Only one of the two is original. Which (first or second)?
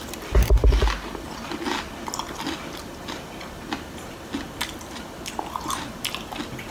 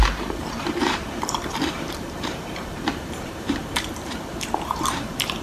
first